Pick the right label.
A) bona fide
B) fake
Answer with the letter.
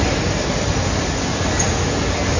A